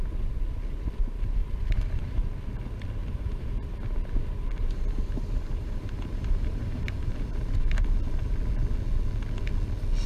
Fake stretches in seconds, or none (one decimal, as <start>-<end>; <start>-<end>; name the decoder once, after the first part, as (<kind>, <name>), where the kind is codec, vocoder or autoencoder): 3.0-3.7 (vocoder, BigVGAN v2); 4.6-7.5